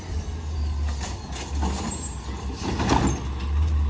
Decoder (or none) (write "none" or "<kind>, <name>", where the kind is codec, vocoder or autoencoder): none